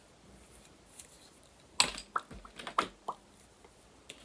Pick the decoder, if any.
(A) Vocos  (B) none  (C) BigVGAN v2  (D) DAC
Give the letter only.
B